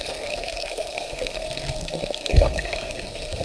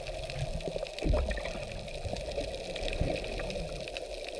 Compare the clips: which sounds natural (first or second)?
second